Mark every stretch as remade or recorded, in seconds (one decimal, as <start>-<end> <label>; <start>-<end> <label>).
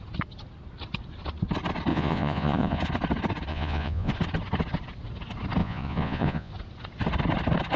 0.0-1.9 recorded; 1.9-2.8 remade; 2.8-3.5 recorded; 3.5-4.1 remade; 4.1-5.6 recorded; 5.6-6.5 remade; 6.5-7.8 recorded